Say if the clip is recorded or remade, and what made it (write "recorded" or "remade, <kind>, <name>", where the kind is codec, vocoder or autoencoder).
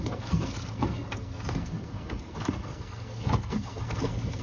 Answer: remade, codec, SNAC